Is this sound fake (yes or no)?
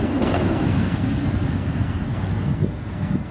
yes